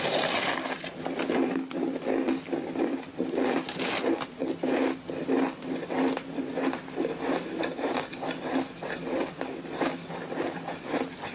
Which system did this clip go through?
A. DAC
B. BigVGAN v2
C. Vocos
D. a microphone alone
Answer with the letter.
D